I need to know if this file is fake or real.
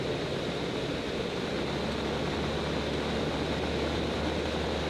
real